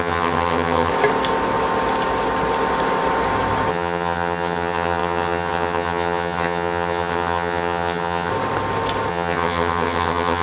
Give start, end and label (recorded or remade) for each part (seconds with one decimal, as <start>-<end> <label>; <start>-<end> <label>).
0.0-0.9 remade; 0.9-3.7 recorded; 3.7-8.3 remade; 8.3-9.1 recorded; 9.1-10.4 remade